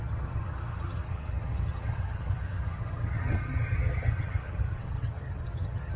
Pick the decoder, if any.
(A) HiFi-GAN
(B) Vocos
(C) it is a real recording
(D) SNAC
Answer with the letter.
A